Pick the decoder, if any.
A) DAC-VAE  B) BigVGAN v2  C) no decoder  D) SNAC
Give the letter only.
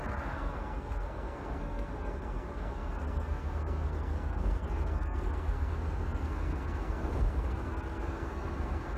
D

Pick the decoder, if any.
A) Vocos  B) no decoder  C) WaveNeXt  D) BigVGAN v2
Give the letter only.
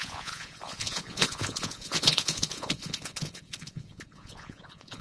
A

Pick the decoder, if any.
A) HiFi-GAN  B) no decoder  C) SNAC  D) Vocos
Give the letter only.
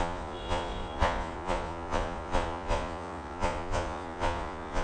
D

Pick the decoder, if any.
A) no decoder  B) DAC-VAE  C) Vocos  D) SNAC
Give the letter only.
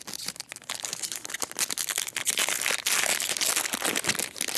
A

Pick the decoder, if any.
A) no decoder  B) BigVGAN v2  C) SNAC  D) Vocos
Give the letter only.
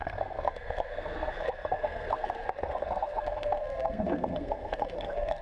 C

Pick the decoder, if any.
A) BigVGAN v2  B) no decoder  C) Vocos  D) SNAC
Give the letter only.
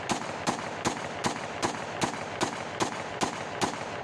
B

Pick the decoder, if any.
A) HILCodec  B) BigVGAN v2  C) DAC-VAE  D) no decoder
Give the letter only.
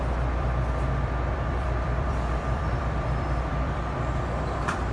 B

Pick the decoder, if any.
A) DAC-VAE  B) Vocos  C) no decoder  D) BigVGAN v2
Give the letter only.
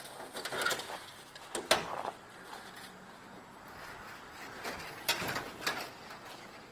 C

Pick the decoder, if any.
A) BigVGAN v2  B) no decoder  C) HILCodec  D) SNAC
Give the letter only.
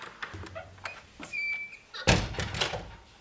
A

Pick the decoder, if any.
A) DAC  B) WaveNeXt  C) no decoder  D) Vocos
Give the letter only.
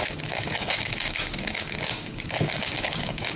A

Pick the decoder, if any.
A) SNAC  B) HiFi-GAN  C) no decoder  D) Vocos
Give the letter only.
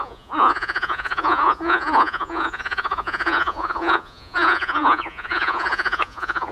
D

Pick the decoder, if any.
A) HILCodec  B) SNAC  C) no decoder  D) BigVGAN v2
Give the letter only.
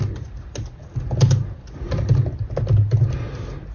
C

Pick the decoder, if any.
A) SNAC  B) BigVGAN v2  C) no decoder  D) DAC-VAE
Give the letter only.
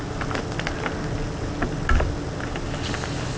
C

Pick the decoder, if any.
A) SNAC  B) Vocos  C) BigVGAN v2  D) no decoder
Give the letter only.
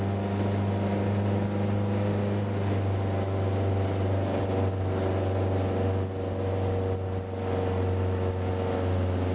D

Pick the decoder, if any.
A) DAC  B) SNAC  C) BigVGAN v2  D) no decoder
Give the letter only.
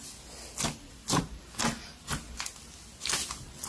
D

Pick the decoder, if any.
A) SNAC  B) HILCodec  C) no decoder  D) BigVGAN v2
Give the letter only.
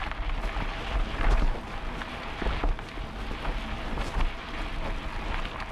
C